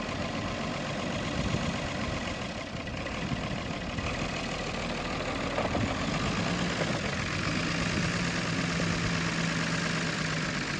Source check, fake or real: real